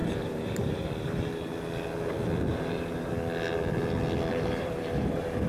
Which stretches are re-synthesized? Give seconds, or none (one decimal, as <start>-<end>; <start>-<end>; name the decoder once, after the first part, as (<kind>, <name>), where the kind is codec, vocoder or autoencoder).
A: 0.0-1.5 (vocoder, BigVGAN v2); 2.5-3.1; 4.3-5.5